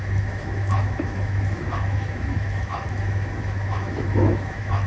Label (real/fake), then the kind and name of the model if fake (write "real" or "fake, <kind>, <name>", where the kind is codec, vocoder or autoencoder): fake, autoencoder, DAC-VAE